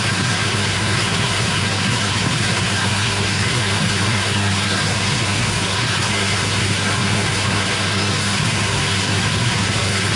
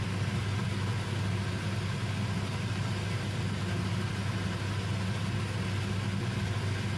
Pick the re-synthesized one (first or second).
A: first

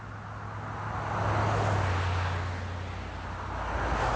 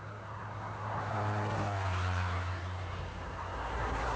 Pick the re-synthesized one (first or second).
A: second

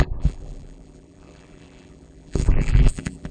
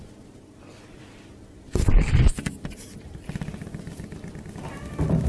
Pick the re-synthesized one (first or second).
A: first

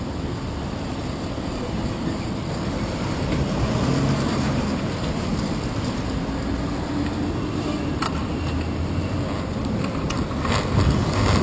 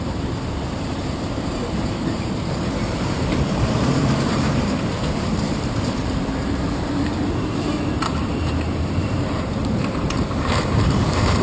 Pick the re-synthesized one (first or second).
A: second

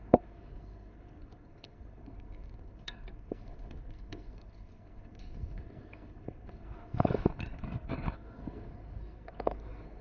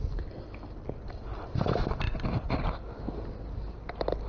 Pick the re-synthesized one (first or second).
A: first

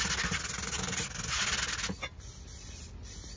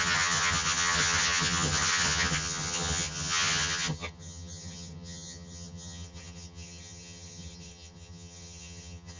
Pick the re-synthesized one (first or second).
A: second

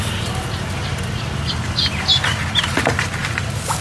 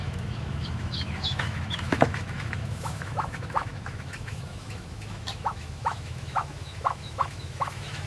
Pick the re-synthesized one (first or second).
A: second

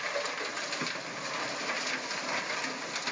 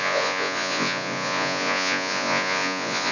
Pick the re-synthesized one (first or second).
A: second